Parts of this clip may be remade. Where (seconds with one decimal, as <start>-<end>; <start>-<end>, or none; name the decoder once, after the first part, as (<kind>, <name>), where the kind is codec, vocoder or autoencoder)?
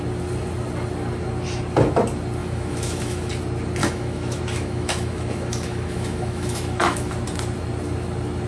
2.4-3.3 (autoencoder, DAC-VAE); 3.8-7.1